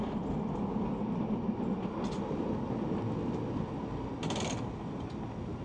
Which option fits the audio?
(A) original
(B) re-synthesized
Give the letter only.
A